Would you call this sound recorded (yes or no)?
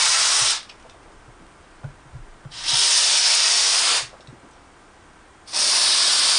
yes